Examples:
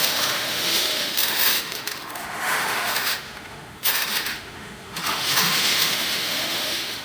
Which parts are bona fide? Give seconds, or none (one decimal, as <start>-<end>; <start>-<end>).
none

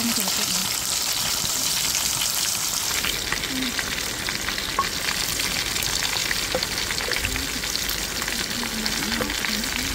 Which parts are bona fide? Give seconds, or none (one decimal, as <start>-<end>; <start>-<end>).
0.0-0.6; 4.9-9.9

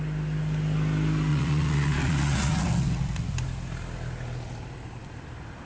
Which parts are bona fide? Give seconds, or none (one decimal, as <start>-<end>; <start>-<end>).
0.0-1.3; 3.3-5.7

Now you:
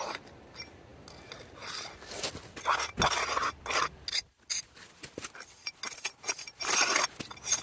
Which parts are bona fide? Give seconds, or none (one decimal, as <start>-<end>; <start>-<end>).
0.0-7.6

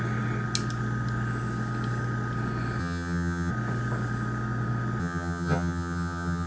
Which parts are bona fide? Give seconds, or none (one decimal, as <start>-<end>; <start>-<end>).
0.0-2.8; 3.5-5.0

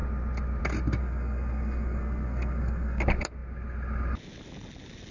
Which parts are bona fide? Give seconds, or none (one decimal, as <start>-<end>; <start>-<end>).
0.0-1.0; 3.0-5.1

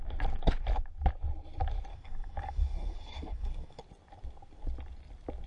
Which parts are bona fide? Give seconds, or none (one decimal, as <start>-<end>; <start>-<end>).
0.0-1.9; 3.8-5.5

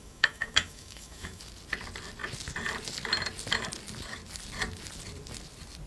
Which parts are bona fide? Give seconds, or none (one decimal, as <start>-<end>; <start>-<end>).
1.4-5.9